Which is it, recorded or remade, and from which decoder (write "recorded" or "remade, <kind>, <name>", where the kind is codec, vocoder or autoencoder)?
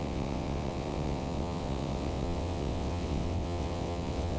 remade, vocoder, WaveNeXt